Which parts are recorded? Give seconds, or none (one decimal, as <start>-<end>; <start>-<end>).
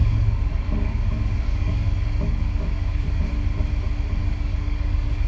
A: 3.2-4.2